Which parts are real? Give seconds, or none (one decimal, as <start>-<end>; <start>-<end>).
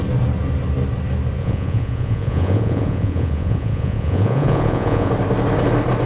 0.0-1.4; 5.1-6.1